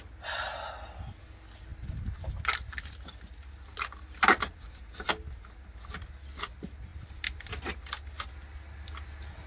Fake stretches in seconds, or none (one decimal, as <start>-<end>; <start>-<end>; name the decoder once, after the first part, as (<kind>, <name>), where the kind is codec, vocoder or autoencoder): none